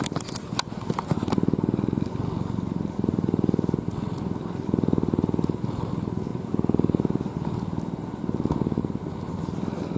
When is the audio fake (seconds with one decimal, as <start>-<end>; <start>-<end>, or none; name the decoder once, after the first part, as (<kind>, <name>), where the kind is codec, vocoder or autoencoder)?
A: none